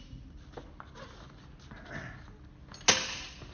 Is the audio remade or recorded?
recorded